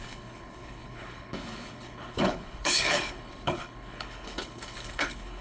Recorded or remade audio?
remade